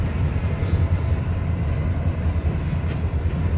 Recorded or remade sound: recorded